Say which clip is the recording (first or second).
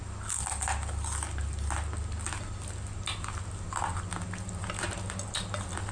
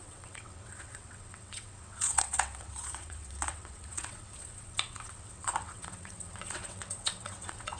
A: first